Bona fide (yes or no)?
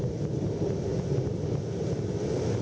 yes